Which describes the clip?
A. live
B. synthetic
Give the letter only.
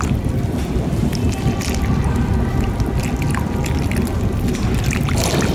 A